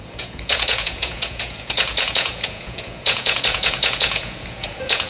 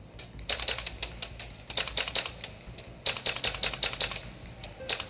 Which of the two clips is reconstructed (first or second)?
first